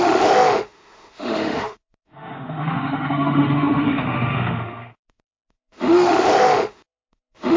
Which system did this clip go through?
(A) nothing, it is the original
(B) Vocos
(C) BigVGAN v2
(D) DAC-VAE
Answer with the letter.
D